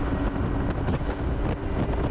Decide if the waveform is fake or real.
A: real